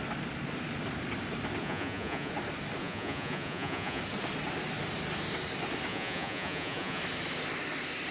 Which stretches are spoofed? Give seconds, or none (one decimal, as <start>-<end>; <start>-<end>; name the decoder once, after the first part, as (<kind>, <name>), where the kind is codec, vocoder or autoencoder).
1.6-2.3 (vocoder, Vocos); 2.8-4.0; 5.9-7.0